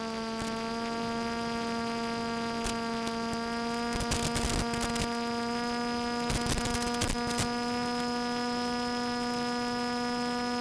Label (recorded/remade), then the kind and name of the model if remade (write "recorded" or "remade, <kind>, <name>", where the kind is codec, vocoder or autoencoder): recorded